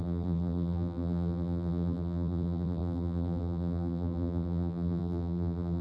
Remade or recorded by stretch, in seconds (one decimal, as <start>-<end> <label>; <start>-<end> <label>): 0.0-5.8 remade